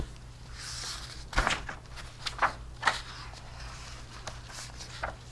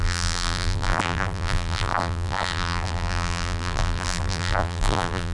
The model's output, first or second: second